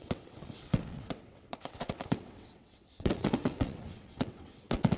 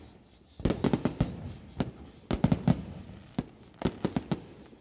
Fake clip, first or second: first